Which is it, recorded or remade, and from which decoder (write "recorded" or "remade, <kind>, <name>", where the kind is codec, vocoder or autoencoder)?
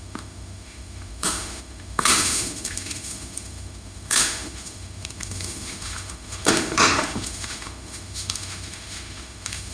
remade, autoencoder, DAC-VAE